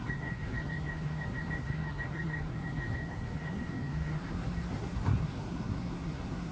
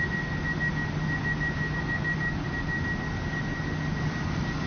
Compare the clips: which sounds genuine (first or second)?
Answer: second